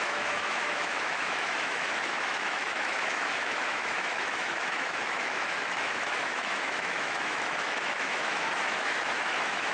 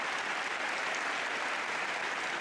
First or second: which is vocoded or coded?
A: first